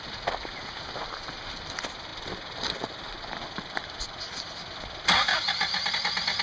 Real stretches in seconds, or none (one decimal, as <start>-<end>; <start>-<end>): 0.0-6.4